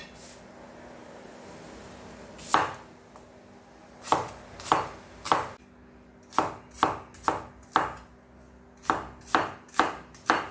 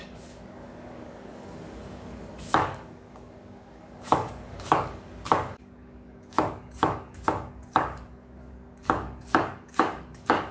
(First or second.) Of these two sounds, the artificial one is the second